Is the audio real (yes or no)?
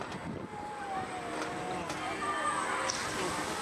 yes